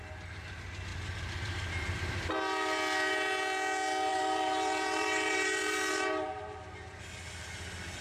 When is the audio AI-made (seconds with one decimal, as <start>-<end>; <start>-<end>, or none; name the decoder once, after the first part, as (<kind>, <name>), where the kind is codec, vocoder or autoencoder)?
0.9-2.2 (vocoder, BigVGAN v2); 4.1-6.6